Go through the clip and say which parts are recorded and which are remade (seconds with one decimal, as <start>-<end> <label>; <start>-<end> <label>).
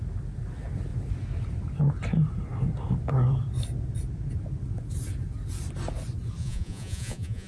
0.0-6.4 recorded; 6.4-7.5 remade